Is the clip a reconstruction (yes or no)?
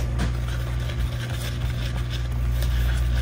no